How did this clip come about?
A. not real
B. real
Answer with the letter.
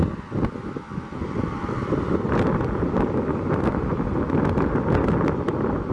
B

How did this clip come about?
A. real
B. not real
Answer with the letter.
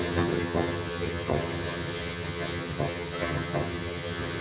B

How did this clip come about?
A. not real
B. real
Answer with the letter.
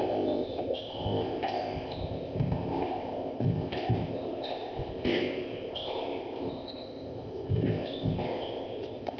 A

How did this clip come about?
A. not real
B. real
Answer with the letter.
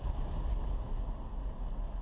B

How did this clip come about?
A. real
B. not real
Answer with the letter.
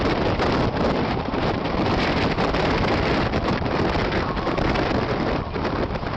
B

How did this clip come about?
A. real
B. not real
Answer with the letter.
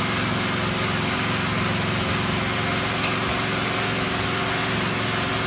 A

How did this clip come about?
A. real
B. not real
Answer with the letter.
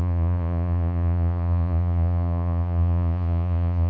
B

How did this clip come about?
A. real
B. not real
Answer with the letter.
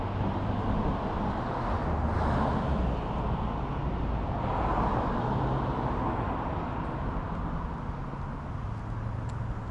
A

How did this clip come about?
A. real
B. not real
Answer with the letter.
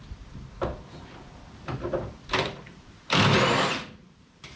A